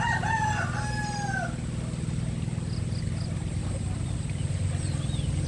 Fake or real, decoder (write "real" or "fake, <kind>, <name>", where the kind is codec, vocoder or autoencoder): real